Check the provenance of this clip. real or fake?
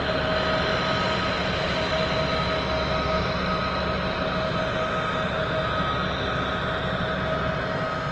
real